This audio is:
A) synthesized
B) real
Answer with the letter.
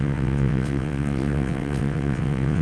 A